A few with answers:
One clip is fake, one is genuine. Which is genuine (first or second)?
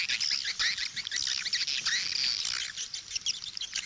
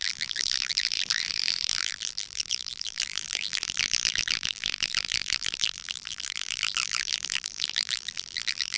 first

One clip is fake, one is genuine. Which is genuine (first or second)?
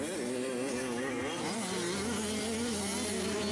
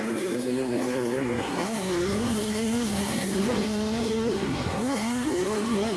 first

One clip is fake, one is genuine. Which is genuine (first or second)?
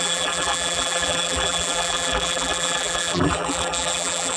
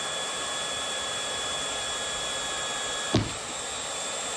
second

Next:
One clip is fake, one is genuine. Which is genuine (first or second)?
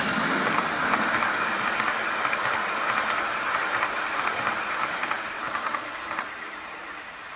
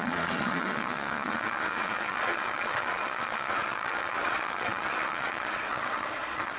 first